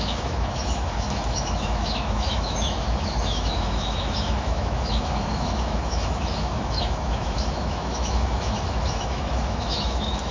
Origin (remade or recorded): remade